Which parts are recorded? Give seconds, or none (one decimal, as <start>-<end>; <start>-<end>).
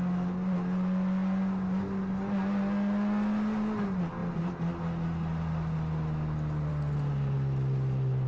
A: 0.0-8.3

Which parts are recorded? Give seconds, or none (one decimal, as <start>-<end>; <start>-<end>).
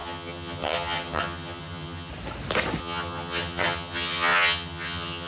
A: 2.1-2.8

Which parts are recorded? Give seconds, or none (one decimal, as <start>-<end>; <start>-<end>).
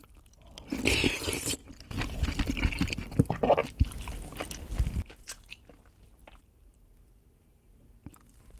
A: 0.0-1.6; 2.4-8.6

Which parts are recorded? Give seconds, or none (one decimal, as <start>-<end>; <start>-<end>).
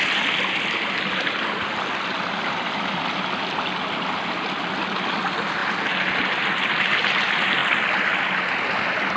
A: 0.0-9.2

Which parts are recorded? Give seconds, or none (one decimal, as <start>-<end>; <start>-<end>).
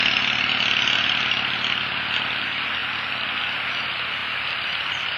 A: 0.0-4.2